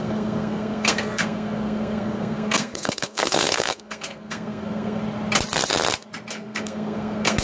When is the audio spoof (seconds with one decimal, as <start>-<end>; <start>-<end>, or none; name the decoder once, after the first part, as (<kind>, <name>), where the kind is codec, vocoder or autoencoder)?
0.0-5.0 (codec, SNAC); 6.3-7.4